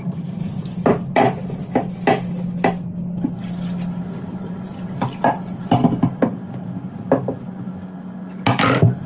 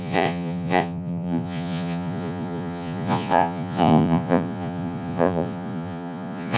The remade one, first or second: second